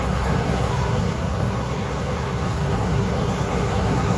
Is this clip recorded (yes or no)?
no